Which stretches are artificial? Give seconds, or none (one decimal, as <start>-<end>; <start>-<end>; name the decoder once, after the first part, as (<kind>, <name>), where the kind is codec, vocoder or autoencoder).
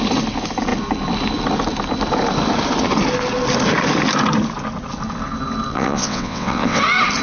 5.7-6.8 (vocoder, WaveNeXt)